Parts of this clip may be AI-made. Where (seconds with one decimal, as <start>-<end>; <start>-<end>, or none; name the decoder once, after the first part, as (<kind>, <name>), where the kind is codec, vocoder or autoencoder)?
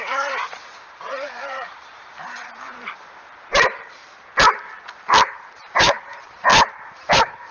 0.0-4.0 (vocoder, BigVGAN v2); 5.5-6.5; 7.0-7.5